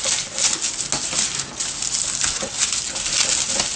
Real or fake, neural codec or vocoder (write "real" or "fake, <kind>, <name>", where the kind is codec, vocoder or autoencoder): real